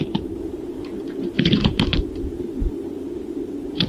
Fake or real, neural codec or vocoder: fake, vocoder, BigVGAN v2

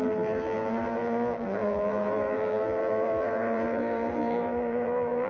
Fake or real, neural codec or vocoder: fake, vocoder, BigVGAN v2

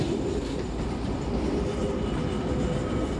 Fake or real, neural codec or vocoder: real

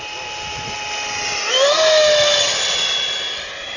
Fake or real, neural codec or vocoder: real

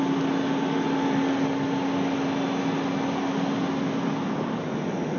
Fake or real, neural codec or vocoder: real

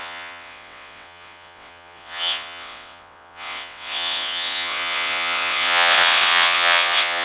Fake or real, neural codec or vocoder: fake, vocoder, WaveNeXt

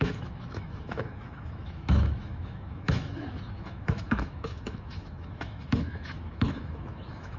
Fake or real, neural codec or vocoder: fake, autoencoder, DAC-VAE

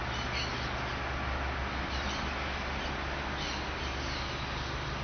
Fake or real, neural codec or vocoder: real